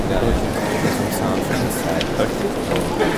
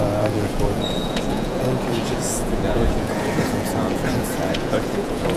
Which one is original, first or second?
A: first